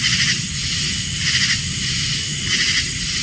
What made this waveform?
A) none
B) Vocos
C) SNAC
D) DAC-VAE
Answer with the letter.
A